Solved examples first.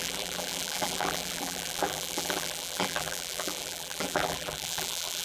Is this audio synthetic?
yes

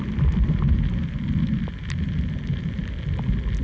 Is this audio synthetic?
no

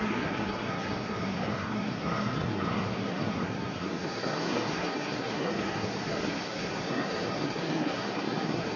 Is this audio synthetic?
yes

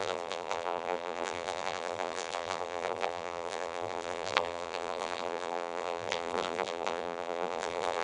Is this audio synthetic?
yes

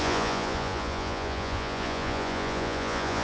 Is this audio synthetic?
yes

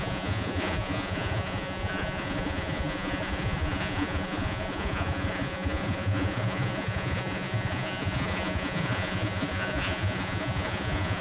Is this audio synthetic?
yes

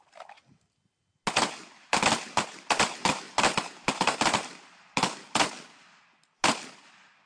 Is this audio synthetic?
no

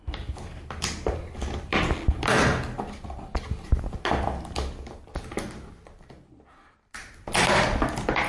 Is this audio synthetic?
no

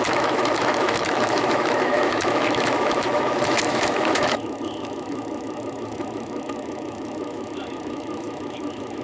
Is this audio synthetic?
yes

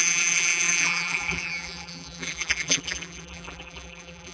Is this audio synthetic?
yes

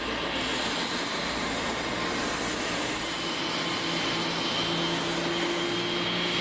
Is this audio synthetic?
no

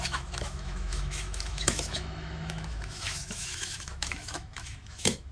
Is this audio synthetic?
yes